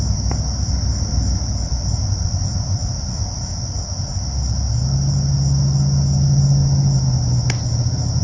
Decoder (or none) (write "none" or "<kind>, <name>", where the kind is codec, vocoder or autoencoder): none